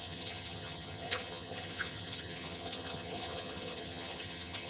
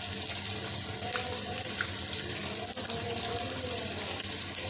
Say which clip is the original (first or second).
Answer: second